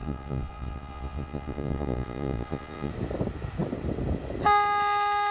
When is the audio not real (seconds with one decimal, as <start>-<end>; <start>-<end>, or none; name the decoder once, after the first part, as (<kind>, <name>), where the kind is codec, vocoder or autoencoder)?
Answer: 0.0-2.9 (vocoder, Vocos)